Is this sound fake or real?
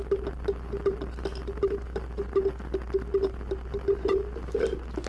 real